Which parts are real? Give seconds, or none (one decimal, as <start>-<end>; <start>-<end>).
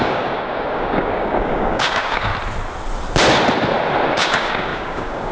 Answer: 2.3-4.1